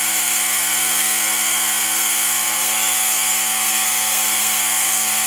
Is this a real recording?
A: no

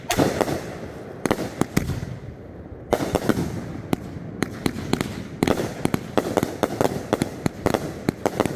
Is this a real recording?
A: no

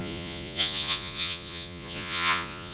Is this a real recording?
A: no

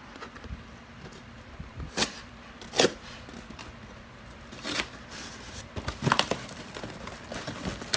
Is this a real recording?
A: no